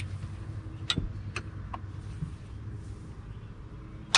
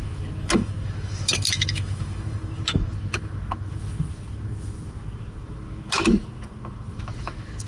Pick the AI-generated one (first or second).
second